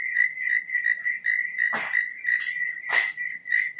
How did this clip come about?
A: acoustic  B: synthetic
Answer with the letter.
A